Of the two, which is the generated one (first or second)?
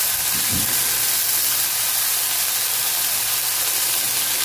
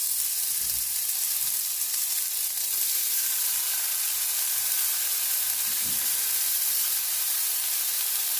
second